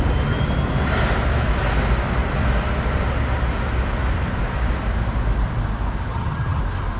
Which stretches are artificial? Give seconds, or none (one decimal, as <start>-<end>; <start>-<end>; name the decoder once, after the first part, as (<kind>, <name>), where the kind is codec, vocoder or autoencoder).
6.1-6.6 (vocoder, HiFi-GAN)